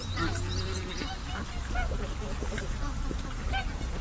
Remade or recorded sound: recorded